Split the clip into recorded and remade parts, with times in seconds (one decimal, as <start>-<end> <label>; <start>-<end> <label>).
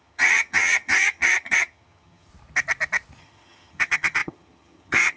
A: 0.0-2.3 remade; 2.3-3.2 recorded; 3.2-5.2 remade